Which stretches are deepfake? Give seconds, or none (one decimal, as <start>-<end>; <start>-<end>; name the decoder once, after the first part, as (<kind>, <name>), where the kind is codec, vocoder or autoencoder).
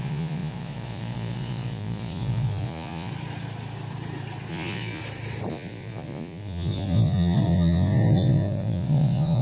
0.0-3.1 (vocoder, Vocos); 4.5-5.0; 5.5-9.4